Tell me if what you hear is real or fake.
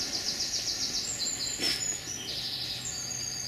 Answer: real